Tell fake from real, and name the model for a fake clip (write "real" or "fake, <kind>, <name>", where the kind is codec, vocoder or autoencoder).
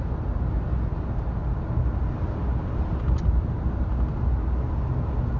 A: real